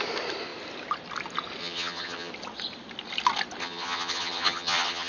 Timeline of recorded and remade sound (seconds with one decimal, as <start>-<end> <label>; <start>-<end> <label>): 0.0-1.6 recorded; 1.6-2.3 remade; 2.3-3.6 recorded; 3.6-5.1 remade